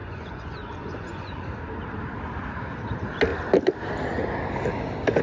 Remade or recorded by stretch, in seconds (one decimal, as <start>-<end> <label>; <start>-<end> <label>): 0.0-1.4 remade; 1.4-5.2 recorded